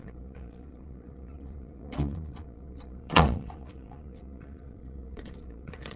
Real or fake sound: fake